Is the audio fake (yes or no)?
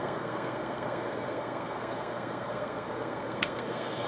yes